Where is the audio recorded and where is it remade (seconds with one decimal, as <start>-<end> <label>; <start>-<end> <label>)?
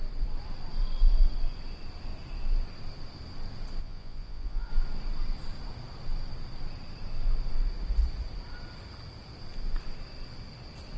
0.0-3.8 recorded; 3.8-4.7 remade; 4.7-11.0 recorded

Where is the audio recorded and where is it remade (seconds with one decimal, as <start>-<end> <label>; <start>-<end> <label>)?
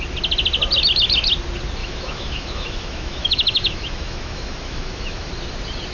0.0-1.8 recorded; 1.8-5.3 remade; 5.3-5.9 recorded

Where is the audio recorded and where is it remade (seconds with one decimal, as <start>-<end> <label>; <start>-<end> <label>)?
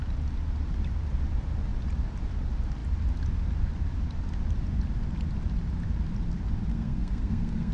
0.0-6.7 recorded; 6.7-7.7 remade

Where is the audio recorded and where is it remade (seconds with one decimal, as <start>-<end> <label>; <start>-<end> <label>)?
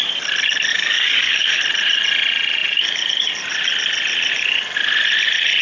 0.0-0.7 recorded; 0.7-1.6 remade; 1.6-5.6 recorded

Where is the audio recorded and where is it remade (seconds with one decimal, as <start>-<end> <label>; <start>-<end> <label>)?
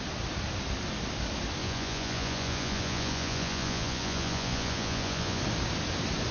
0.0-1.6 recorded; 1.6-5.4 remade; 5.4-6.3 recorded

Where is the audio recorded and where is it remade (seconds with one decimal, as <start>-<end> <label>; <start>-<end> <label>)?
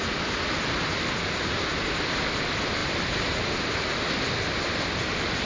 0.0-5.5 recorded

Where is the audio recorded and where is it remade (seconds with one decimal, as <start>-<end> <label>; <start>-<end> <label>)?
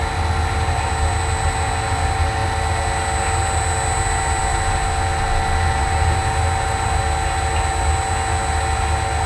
0.0-9.3 recorded